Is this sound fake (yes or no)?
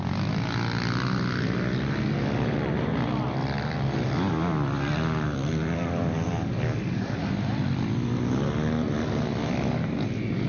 no